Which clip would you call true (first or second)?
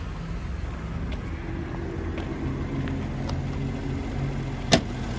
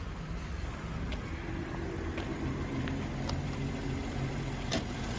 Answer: first